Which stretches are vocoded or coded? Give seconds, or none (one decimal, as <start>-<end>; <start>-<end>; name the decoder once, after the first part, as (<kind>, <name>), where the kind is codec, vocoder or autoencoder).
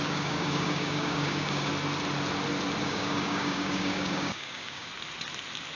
0.0-1.7 (codec, DAC); 2.8-4.9